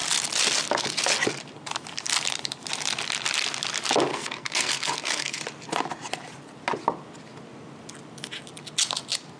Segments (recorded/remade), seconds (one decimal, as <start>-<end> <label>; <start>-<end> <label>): 0.0-4.1 recorded; 4.1-5.4 remade; 5.4-9.4 recorded